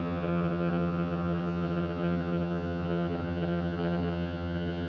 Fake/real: fake